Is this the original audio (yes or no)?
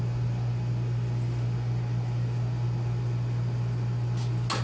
yes